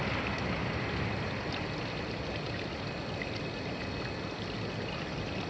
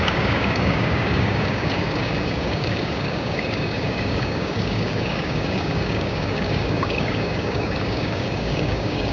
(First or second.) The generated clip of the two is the second